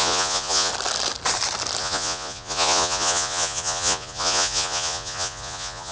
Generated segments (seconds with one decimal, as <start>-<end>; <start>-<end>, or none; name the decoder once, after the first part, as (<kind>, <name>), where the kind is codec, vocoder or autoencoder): 0.0-0.7 (vocoder, Vocos); 1.8-5.9

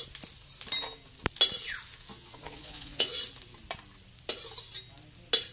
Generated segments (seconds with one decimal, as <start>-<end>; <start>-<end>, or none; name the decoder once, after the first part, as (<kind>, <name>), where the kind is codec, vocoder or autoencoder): 2.1-3.2 (vocoder, Vocos)

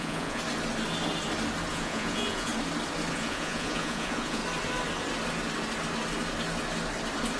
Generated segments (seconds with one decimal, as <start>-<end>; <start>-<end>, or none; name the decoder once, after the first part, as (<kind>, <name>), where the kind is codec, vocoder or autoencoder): 0.0-0.4 (vocoder, Vocos); 1.7-2.5; 3.1-4.4

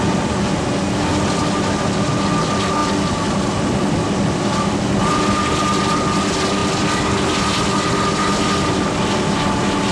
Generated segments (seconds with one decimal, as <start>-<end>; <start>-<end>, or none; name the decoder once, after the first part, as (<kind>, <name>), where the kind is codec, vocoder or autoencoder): none

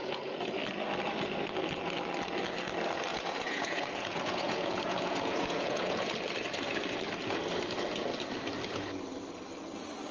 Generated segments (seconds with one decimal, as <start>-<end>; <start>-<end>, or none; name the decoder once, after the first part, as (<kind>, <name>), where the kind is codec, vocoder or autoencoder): 0.0-0.6 (vocoder, Vocos); 3.1-6.1

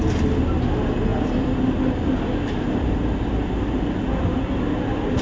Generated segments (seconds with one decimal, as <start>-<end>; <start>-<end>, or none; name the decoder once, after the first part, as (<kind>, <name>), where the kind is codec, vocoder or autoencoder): none